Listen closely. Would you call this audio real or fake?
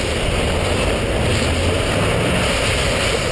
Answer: real